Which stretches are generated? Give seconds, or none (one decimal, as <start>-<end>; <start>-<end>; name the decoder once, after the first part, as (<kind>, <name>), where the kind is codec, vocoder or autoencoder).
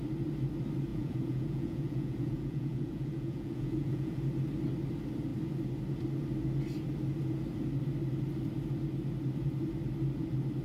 0.9-4.2 (vocoder, Vocos)